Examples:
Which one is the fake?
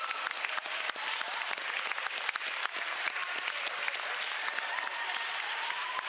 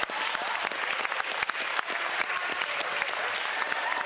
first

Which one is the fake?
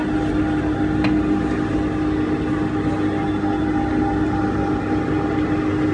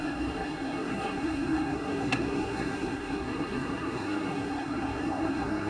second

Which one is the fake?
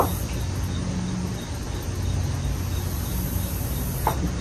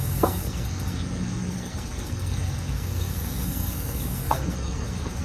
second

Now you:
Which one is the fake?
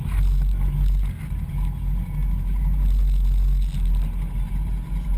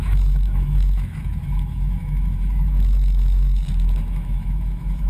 second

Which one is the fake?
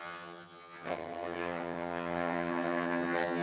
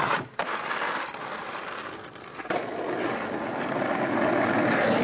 first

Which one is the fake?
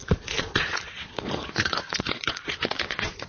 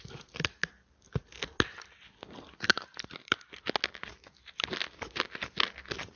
first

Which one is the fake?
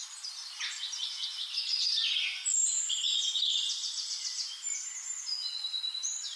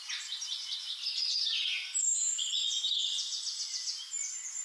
first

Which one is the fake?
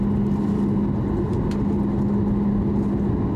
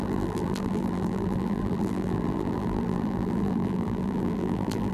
second